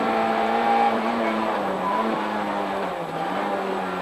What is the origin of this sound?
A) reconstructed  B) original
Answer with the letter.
A